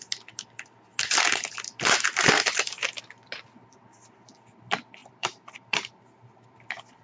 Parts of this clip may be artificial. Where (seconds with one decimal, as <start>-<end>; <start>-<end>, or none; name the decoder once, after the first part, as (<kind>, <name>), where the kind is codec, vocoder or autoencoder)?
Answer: 5.0-6.3 (vocoder, BigVGAN v2)